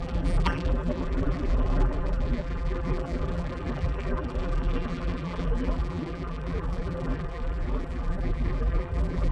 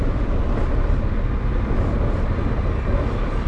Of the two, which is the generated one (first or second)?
first